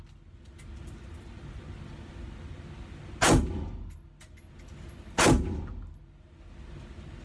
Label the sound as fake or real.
real